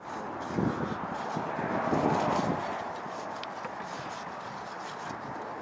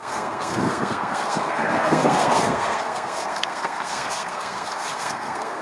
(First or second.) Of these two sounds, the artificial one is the second